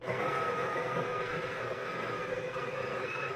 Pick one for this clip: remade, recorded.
remade